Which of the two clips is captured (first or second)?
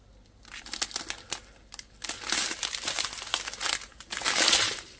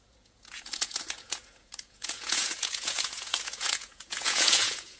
first